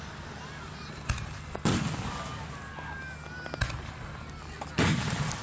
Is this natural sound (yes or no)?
yes